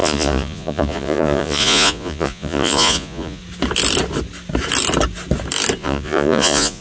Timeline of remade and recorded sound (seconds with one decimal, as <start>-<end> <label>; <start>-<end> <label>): 0.0-3.4 remade; 3.4-5.8 recorded; 5.8-6.8 remade